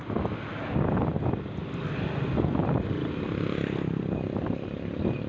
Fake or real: real